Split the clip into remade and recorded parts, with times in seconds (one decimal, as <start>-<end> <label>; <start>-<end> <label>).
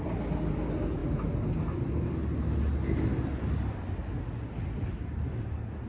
0.0-5.9 recorded